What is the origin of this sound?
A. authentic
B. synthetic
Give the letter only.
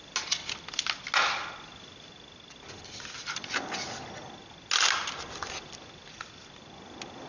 A